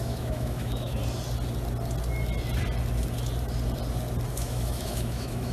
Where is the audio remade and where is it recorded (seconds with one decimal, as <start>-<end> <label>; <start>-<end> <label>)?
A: 0.0-1.0 remade; 1.0-4.3 recorded; 4.3-5.5 remade